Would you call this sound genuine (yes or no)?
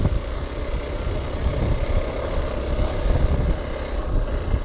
yes